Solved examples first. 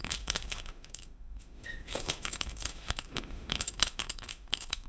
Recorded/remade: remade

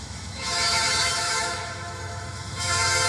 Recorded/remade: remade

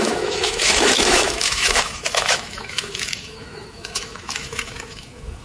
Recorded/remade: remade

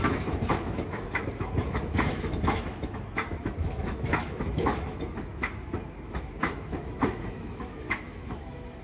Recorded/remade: remade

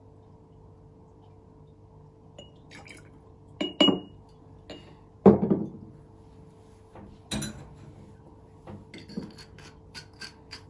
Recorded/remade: recorded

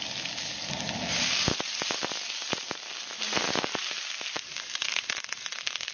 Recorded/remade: recorded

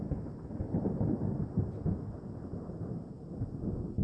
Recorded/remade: recorded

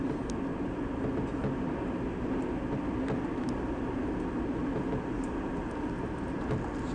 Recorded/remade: recorded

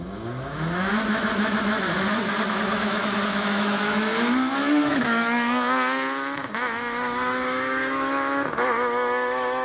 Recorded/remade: remade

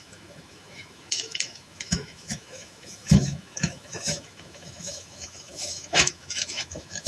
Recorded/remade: remade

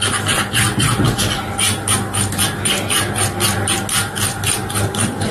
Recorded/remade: recorded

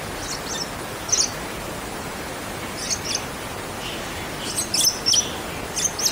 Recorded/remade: recorded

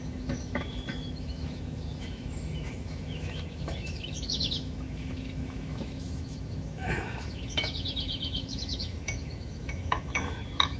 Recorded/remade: remade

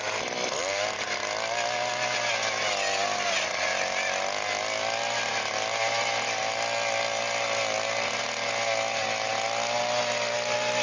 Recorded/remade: recorded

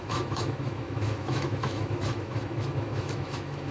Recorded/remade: remade